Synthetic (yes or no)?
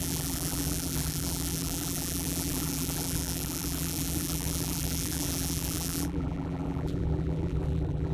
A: yes